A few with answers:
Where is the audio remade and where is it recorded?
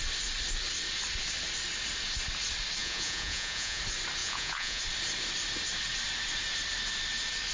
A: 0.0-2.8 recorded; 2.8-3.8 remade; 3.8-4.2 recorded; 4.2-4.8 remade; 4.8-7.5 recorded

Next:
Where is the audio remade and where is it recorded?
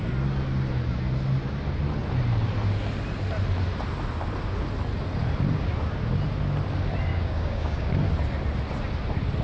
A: 0.0-7.1 recorded; 7.1-7.9 remade; 7.9-9.4 recorded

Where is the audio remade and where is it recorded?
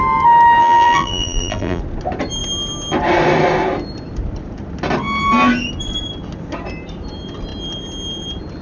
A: 0.0-0.6 recorded; 0.6-1.8 remade; 1.8-8.6 recorded